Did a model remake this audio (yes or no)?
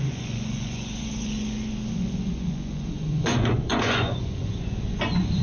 yes